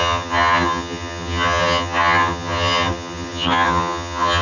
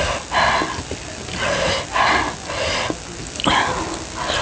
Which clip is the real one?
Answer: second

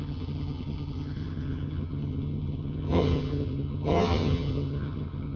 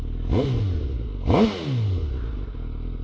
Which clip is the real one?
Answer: second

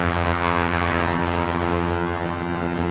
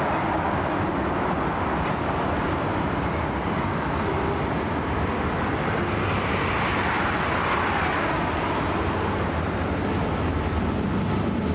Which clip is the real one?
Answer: second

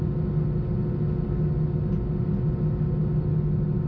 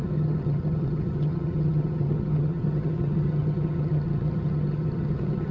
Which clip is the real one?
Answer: first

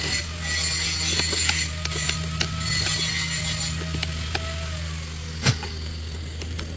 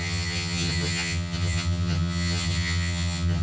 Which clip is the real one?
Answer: first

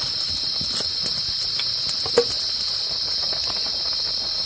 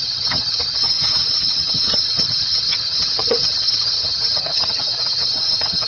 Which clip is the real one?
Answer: first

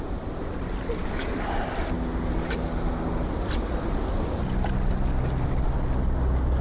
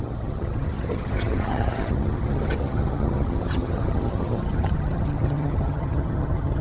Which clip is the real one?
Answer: first